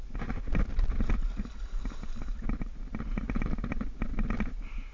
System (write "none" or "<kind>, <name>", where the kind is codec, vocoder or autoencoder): none